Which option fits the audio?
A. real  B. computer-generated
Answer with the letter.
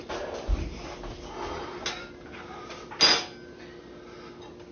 A